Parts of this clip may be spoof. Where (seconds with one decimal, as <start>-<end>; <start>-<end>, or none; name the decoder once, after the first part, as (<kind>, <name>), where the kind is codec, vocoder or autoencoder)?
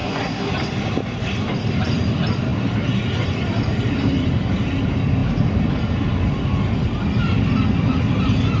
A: 0.0-0.5 (codec, SNAC)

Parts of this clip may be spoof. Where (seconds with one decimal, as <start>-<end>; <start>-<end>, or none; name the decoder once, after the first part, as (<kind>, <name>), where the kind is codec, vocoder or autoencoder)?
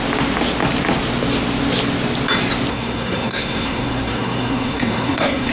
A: 2.7-5.5 (codec, SNAC)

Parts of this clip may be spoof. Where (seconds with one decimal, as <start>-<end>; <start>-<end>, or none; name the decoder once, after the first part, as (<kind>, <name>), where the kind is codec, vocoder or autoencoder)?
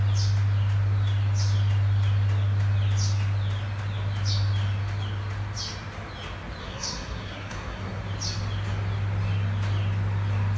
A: 6.6-8.0 (codec, SNAC)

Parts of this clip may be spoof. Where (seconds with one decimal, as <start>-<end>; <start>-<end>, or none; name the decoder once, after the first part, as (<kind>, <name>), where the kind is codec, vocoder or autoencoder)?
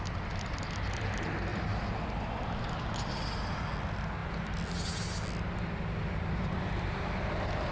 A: none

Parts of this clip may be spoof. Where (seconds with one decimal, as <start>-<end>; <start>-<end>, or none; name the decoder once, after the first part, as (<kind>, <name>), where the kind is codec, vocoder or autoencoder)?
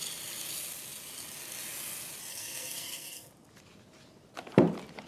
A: 2.3-3.3 (codec, SNAC)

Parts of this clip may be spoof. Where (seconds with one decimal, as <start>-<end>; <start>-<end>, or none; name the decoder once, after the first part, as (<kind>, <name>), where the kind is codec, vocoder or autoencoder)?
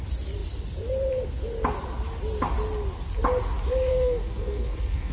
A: 3.9-5.1 (codec, SNAC)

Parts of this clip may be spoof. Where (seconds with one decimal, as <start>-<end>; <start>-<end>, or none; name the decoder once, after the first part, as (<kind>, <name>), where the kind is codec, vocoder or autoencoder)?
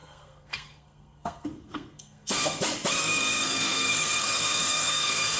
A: 0.0-2.6 (codec, SNAC); 3.0-5.4